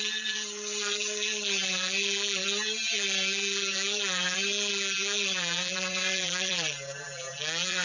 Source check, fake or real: fake